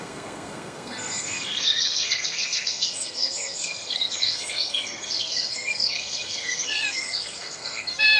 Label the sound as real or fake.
fake